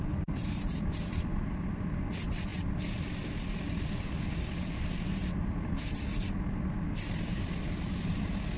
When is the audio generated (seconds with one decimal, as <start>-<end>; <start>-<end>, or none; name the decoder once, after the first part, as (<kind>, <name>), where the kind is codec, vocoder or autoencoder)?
0.0-8.6 (vocoder, BigVGAN v2)